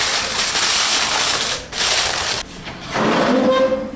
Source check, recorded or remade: recorded